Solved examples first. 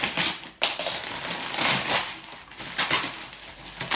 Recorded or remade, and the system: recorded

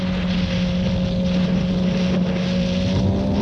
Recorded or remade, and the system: recorded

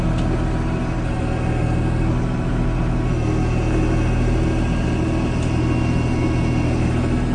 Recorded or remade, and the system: recorded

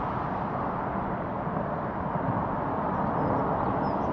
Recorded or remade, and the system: recorded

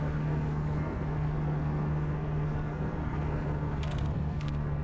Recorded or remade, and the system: remade, codec, SNAC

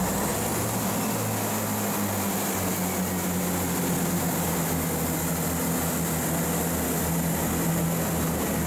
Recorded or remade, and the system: recorded